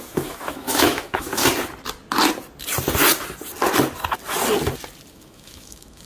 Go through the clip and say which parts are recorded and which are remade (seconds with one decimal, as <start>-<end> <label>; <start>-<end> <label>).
0.0-1.4 remade; 1.4-5.1 recorded; 5.1-6.1 remade